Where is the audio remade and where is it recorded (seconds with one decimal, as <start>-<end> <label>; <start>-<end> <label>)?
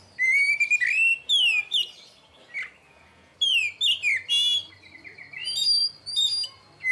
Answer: 0.0-6.9 recorded